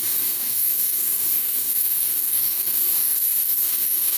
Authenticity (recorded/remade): remade